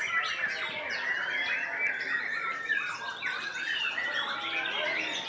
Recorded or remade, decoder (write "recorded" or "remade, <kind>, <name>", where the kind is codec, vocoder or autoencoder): recorded